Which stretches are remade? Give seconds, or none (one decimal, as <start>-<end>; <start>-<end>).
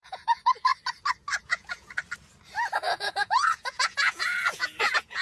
0.0-0.7; 1.4-2.0; 2.9-5.2